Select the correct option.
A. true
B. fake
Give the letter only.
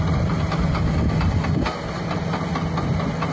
A